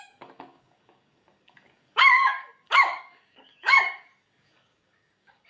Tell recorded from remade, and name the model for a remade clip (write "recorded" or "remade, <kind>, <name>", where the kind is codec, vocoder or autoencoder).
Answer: remade, codec, DAC